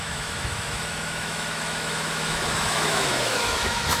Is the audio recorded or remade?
remade